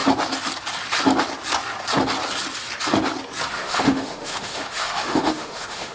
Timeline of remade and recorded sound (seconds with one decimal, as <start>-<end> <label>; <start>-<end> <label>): 0.0-3.5 recorded; 3.5-5.9 remade